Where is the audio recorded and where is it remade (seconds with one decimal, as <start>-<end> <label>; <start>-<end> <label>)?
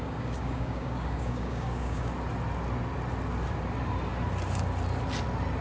0.0-2.1 remade; 2.1-5.6 recorded